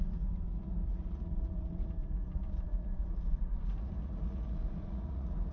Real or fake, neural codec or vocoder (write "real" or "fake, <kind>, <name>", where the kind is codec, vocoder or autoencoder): fake, vocoder, Vocos